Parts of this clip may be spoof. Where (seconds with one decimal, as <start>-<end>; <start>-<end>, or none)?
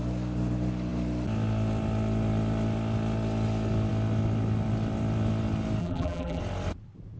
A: 5.8-6.4